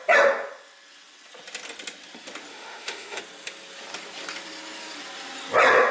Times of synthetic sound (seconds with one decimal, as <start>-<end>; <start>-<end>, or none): 2.5-3.2